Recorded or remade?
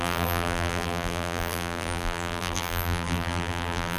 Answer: remade